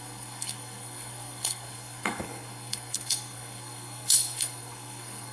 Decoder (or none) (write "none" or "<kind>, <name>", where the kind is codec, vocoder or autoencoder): codec, SNAC